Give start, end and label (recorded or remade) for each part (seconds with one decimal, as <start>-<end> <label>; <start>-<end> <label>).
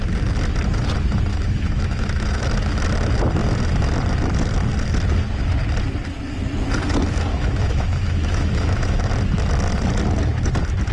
0.0-1.3 recorded; 1.3-2.4 remade; 2.4-7.3 recorded; 7.3-9.1 remade; 9.1-10.9 recorded